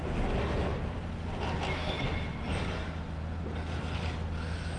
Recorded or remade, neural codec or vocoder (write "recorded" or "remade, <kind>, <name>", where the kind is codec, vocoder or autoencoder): recorded